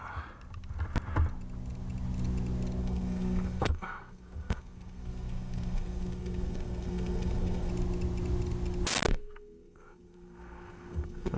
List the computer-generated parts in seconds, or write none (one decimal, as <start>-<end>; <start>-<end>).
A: 2.8-7.7; 9.1-11.4